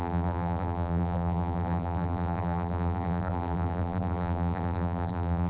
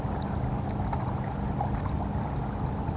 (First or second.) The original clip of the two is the second